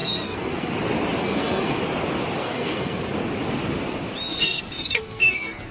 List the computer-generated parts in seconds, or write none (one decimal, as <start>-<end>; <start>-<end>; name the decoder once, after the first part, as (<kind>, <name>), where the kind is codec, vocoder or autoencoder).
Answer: 0.0-0.7 (codec, SNAC); 1.2-1.8; 2.4-3.0; 4.3-5.7